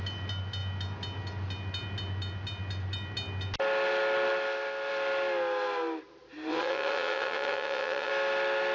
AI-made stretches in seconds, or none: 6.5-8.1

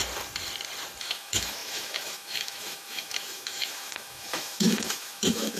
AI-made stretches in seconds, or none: 1.0-5.6

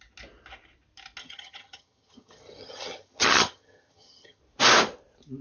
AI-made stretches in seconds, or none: 1.2-4.4

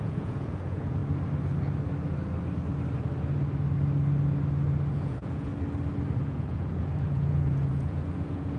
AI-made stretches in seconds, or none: 0.0-1.0; 4.9-5.5; 6.2-8.6

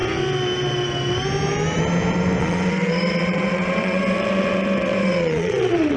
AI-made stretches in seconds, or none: 2.4-6.0